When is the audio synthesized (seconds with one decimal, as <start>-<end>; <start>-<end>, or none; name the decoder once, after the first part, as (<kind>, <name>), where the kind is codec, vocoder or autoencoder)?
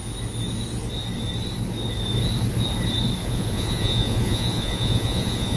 3.2-5.6 (vocoder, Vocos)